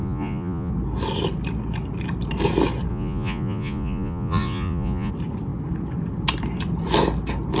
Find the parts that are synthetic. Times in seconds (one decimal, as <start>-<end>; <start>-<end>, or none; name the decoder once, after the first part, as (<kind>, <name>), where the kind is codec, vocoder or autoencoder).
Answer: 0.0-0.7 (vocoder, Vocos); 2.9-5.1